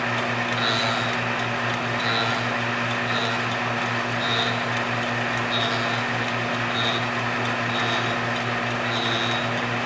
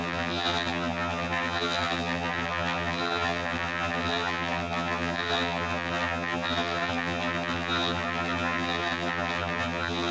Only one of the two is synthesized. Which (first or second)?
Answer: second